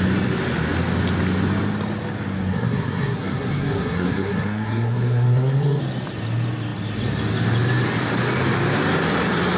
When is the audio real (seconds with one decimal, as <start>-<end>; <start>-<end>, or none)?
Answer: 0.0-2.5; 5.8-9.6